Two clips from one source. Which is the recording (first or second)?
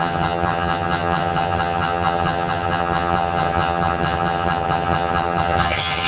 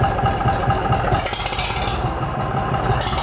second